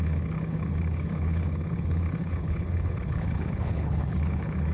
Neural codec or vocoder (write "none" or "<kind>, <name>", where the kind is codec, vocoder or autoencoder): codec, HILCodec